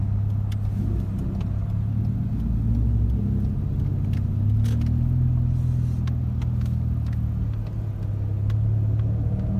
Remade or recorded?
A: recorded